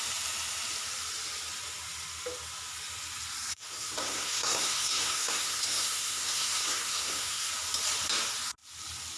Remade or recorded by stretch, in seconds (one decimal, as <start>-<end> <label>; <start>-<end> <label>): 0.0-3.5 recorded; 3.5-7.5 remade; 7.5-9.2 recorded